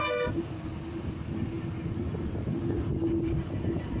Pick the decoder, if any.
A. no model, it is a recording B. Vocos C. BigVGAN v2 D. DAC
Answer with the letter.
A